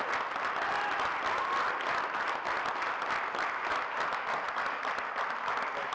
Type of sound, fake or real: real